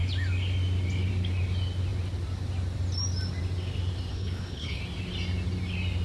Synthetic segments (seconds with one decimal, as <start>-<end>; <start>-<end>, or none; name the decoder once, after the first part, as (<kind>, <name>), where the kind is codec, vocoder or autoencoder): 4.1-4.8 (codec, HILCodec)